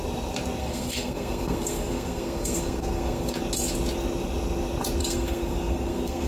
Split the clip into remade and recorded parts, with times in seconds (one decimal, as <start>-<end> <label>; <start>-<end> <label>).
0.0-0.6 recorded; 0.6-3.4 remade; 3.4-5.0 recorded; 5.0-6.3 remade